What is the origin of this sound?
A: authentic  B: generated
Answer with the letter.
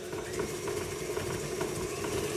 A